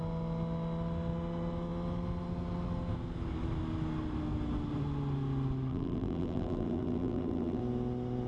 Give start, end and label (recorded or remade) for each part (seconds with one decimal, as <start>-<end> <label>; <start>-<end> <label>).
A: 0.0-5.7 recorded; 5.7-7.6 remade; 7.6-8.3 recorded